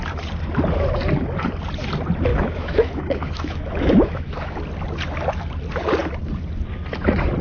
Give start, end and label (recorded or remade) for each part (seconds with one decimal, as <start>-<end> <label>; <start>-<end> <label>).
0.0-2.3 recorded; 2.3-4.6 remade; 4.6-7.4 recorded

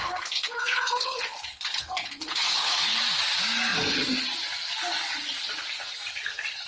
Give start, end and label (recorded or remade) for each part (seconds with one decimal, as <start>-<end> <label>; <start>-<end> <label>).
0.0-3.0 remade; 3.0-6.7 recorded

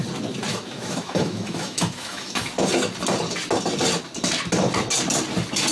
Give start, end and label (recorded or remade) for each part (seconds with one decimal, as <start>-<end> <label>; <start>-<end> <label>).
0.0-0.5 recorded; 0.5-2.5 remade; 2.5-5.7 recorded

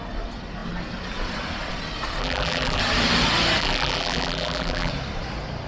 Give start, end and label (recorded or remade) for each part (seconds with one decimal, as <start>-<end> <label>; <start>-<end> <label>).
0.0-2.2 recorded; 2.2-2.8 remade; 2.8-3.6 recorded; 3.6-4.9 remade; 4.9-5.7 recorded

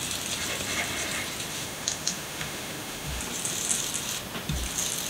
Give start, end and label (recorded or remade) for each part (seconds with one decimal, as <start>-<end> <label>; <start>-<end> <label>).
0.0-1.5 recorded; 1.5-3.2 remade; 3.2-5.1 recorded

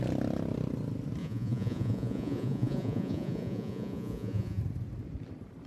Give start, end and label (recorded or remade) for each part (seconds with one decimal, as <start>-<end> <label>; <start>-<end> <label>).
0.0-1.2 recorded; 1.2-4.6 remade; 4.6-5.7 recorded